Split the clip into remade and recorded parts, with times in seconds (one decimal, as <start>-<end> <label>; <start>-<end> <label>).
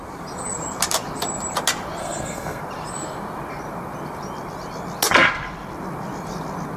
0.0-2.0 recorded; 2.0-2.6 remade; 2.6-6.8 recorded